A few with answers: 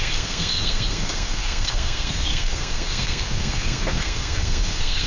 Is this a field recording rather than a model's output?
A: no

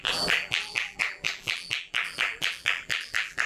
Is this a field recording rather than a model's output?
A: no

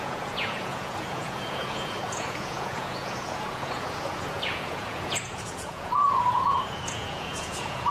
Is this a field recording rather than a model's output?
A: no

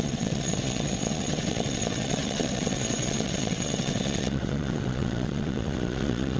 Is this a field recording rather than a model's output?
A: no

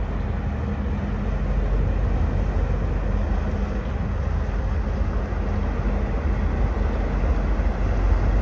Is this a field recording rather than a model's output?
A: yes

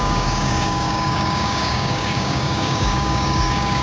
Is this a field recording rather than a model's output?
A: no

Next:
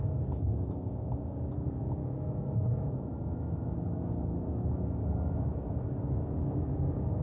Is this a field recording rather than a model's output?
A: no